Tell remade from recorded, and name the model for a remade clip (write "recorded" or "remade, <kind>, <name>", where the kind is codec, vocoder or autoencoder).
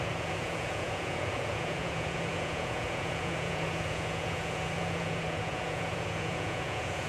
remade, vocoder, Vocos